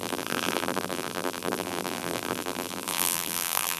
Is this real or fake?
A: fake